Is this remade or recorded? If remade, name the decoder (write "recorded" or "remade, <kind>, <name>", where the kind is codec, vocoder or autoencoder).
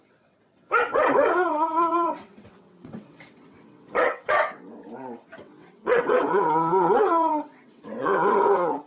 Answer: remade, vocoder, WaveNeXt